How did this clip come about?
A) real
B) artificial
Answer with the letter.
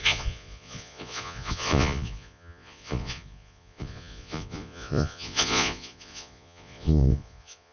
B